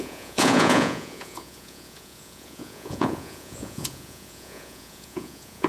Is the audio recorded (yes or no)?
no